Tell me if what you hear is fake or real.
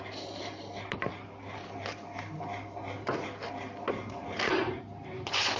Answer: real